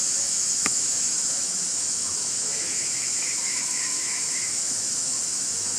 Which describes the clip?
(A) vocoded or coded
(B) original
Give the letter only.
A